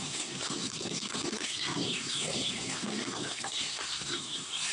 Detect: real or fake fake